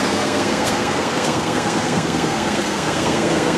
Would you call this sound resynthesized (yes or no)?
yes